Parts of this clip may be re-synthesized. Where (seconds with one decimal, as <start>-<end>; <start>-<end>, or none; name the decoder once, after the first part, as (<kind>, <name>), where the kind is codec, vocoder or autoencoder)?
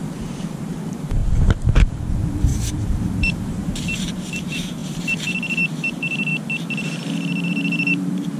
0.0-6.3 (vocoder, BigVGAN v2); 7.5-8.4